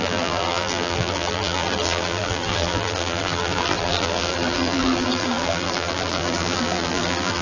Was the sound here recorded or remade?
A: remade